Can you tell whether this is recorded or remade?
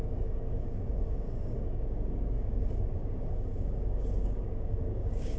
remade